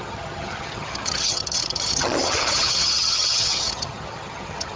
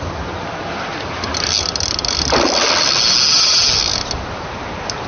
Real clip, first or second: second